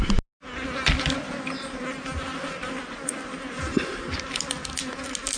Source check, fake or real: real